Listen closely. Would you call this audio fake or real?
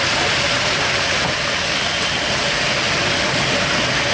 real